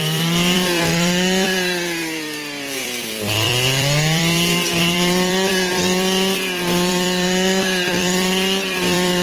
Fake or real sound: fake